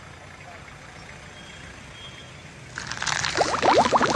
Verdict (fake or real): real